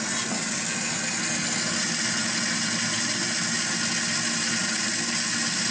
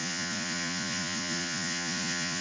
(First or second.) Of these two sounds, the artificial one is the second